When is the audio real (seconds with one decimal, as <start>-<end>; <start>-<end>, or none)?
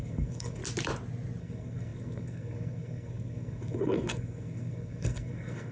0.6-1.4